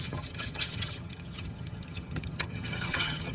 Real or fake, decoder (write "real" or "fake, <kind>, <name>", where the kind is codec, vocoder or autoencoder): fake, vocoder, HiFi-GAN